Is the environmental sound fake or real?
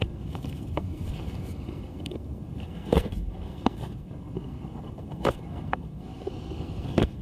fake